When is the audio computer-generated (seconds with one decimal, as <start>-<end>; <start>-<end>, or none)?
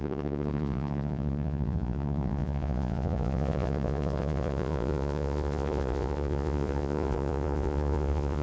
0.0-8.4